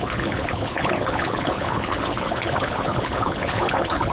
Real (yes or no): no